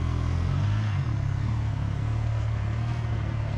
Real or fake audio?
fake